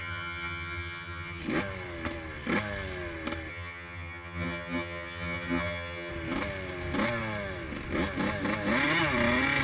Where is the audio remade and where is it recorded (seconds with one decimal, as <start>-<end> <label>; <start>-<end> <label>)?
0.0-1.4 remade; 1.4-3.5 recorded; 3.5-6.1 remade; 6.1-9.6 recorded